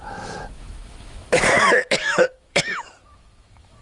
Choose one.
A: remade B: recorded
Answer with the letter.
A